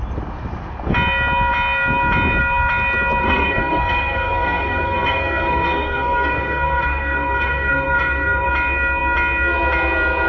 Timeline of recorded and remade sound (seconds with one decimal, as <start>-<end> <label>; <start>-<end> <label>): 0.0-3.2 recorded; 3.2-8.5 remade; 8.5-10.3 recorded